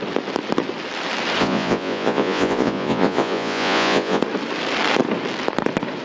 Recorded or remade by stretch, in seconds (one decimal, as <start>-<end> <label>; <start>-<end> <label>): 0.0-1.4 recorded; 1.4-4.2 remade; 4.2-6.0 recorded